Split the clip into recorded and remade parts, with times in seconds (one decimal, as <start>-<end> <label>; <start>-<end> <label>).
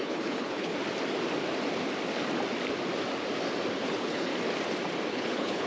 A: 0.0-0.7 remade; 0.7-3.8 recorded; 3.8-4.3 remade; 4.3-5.1 recorded; 5.1-5.7 remade